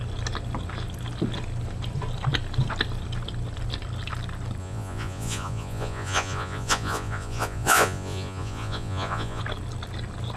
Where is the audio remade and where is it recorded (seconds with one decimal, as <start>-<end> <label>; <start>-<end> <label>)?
0.0-4.6 recorded; 4.6-9.4 remade; 9.4-10.4 recorded